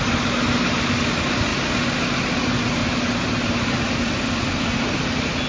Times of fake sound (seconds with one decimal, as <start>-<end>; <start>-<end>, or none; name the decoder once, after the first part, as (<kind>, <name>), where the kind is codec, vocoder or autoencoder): none